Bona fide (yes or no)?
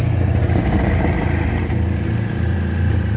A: no